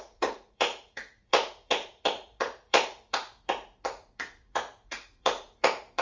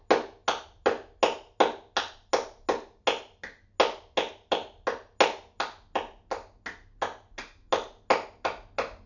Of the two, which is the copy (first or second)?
first